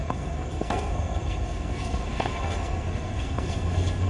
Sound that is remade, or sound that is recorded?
remade